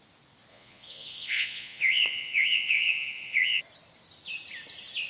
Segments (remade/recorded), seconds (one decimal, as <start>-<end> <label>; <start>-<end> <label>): 0.0-0.5 recorded; 0.5-3.6 remade; 3.6-5.1 recorded